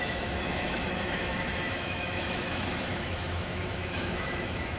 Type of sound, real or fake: fake